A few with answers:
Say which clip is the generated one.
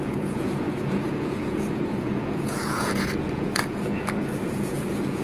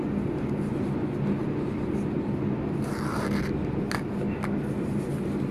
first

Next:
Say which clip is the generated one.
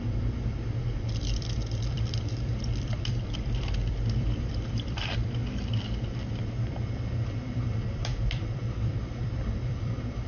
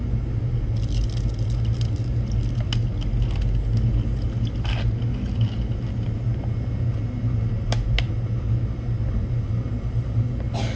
first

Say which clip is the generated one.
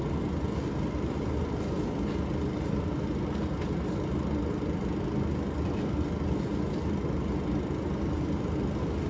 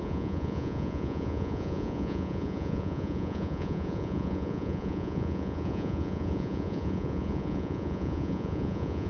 second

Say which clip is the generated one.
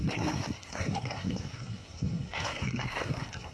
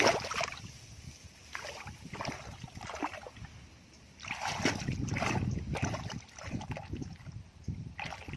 first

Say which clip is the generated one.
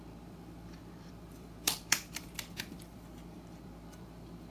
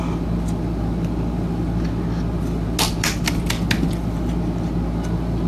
first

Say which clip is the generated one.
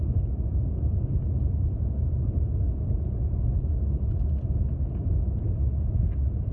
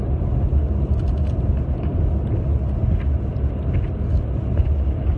first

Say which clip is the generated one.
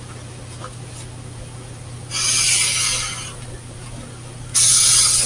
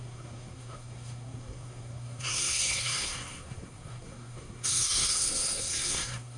second